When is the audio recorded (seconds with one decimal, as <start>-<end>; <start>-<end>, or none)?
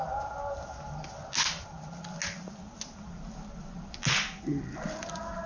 0.0-5.5